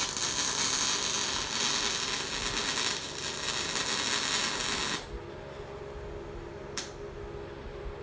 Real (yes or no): yes